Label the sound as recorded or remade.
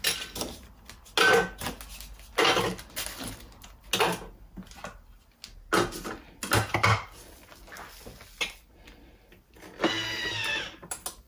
recorded